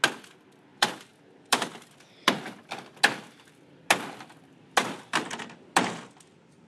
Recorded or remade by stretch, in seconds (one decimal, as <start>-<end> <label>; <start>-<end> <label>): 0.0-0.7 recorded; 0.7-2.4 remade; 2.4-4.8 recorded; 4.8-5.4 remade; 5.4-6.7 recorded